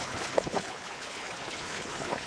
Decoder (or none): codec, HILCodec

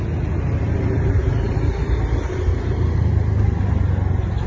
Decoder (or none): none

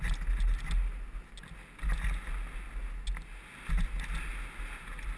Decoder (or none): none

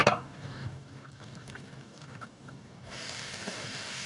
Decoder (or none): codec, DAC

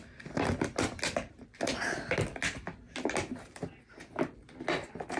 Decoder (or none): none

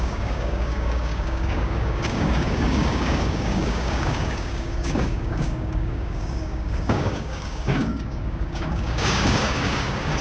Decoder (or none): codec, DAC